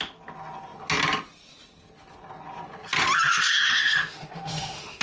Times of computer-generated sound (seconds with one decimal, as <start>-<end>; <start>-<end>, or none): 3.3-5.0

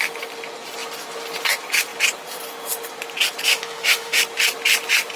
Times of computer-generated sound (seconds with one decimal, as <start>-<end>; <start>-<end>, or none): 3.5-4.2

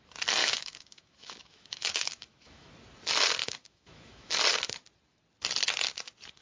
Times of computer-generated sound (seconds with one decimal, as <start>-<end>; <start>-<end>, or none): 0.4-2.7; 3.4-4.3